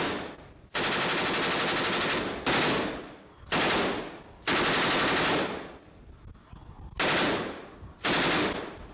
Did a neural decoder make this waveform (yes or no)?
no